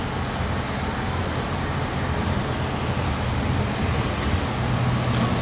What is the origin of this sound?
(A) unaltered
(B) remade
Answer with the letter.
A